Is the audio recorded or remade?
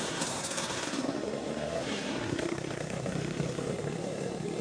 remade